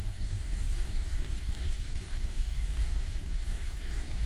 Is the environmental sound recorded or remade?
remade